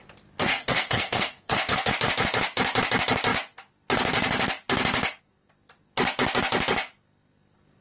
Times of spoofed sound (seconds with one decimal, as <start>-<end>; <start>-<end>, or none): 0.5-1.9